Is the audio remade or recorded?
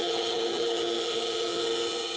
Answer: remade